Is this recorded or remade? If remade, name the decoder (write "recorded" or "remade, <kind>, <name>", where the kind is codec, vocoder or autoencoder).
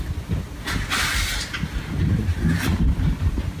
recorded